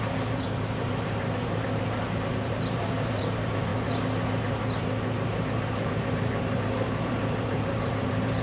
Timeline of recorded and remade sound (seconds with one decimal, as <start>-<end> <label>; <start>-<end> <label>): 0.0-3.7 remade; 3.7-5.9 recorded; 5.9-8.4 remade